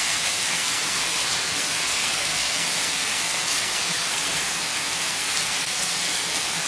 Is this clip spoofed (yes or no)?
yes